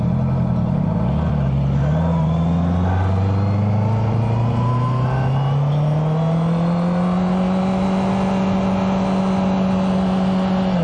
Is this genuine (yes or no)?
yes